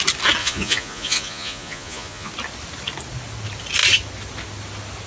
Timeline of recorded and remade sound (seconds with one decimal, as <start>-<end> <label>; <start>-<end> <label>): 0.0-0.4 recorded; 0.4-2.3 remade; 2.3-5.1 recorded